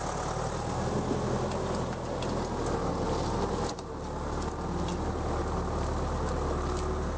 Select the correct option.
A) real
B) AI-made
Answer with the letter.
A